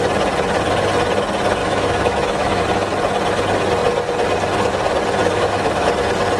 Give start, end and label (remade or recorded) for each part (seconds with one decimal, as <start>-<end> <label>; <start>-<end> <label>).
0.0-1.6 recorded; 1.6-2.6 remade; 2.6-5.2 recorded; 5.2-5.9 remade; 5.9-6.4 recorded